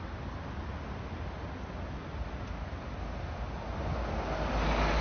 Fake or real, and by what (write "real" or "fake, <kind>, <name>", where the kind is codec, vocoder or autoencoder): real